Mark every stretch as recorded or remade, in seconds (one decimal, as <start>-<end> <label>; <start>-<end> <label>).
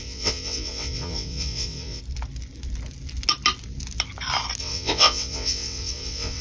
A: 0.0-2.0 remade; 2.0-4.6 recorded; 4.6-6.4 remade